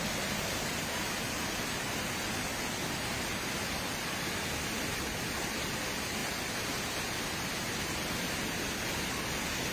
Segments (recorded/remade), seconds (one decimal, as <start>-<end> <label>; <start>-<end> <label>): 0.0-9.7 recorded